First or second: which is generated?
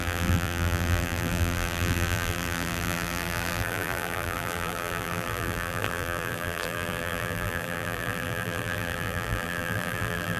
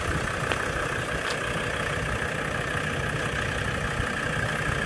first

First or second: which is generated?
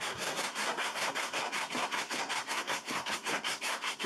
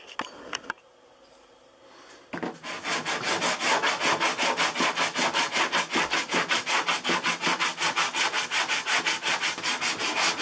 first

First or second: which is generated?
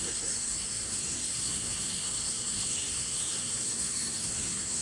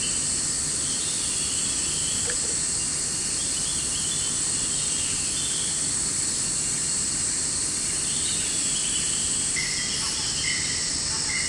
first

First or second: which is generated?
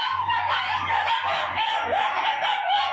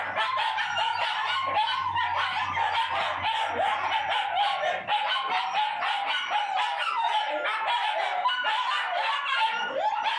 first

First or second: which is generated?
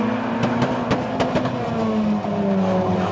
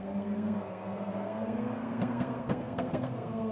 second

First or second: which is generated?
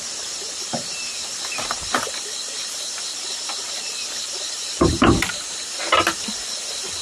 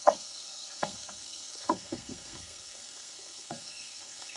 second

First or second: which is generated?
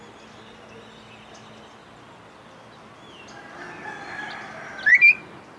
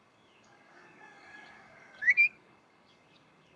second